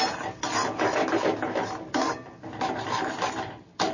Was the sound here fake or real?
real